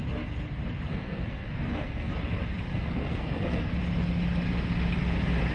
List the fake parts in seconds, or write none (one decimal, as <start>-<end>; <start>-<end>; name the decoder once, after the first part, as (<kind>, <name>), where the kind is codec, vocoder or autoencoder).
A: 0.9-2.1 (codec, SNAC); 2.7-3.7